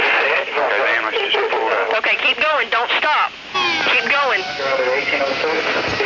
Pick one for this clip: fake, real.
real